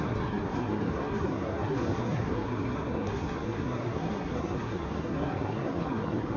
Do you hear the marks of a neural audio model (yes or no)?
yes